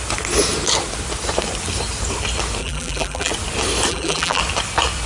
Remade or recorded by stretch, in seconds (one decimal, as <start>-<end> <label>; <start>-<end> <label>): 0.0-2.6 recorded; 2.6-3.3 remade; 3.3-3.9 recorded; 3.9-4.4 remade; 4.4-5.1 recorded